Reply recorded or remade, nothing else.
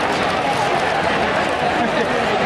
recorded